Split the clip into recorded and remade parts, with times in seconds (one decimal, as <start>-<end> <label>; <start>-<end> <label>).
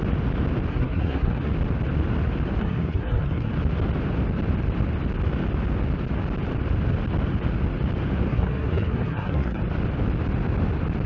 0.0-0.7 recorded; 0.7-1.5 remade; 1.5-2.6 recorded; 2.6-3.5 remade; 3.5-8.3 recorded; 8.3-9.6 remade; 9.6-11.1 recorded